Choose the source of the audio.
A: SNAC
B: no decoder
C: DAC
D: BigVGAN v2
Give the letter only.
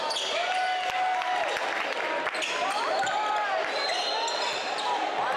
B